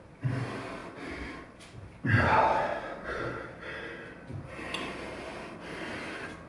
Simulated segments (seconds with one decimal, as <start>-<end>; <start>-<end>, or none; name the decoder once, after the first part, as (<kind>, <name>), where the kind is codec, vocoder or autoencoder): none